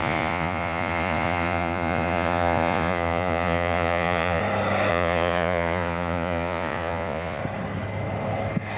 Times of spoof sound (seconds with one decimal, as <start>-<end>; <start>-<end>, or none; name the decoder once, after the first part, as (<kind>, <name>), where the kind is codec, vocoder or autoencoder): 0.0-4.4 (vocoder, Vocos); 4.9-7.4